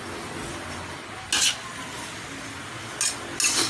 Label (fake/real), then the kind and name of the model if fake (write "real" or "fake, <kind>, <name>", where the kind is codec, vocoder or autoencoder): real